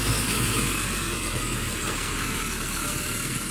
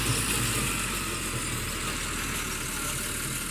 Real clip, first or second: second